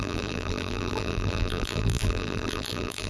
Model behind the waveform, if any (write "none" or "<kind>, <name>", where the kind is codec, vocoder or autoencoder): vocoder, BigVGAN v2